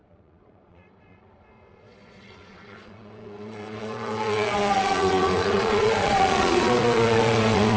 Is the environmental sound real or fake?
fake